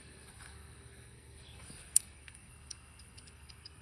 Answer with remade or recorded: remade